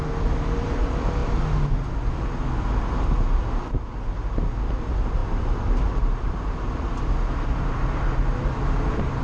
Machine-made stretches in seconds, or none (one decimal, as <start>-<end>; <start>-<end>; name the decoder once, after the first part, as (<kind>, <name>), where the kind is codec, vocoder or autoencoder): none